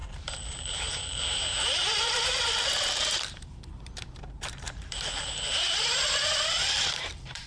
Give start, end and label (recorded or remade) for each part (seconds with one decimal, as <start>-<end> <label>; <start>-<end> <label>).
0.0-7.5 remade